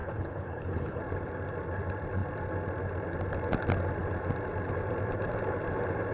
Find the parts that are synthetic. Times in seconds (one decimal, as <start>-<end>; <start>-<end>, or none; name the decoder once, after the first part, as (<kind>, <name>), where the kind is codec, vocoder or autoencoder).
0.0-1.0 (codec, HILCodec)